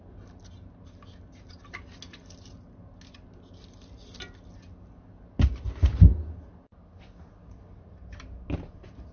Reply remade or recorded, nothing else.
recorded